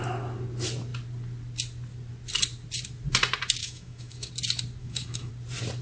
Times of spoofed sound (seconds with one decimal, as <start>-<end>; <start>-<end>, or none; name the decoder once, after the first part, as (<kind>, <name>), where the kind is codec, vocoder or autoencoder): 3.6-4.3 (autoencoder, DAC-VAE); 4.8-5.3